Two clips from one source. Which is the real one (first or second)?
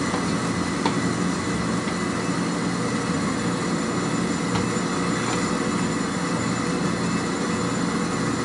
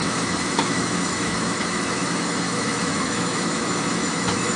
first